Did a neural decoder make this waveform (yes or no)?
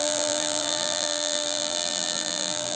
yes